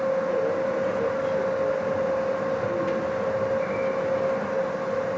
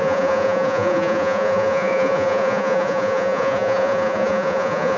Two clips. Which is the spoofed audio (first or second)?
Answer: second